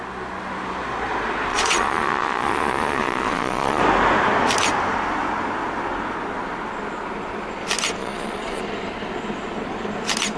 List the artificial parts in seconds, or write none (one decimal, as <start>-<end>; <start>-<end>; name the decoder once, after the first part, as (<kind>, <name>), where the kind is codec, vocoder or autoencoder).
1.5-3.8 (vocoder, Vocos); 8.0-8.6